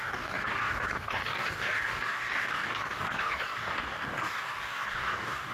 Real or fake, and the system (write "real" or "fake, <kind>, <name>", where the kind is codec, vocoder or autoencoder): fake, codec, DAC